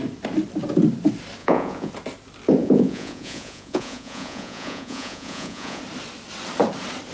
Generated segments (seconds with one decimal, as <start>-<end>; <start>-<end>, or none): 1.4-1.9; 2.6-5.8